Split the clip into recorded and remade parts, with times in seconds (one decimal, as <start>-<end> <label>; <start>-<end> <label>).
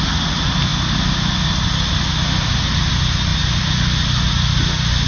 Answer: 0.0-5.1 recorded